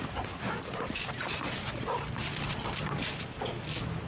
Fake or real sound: real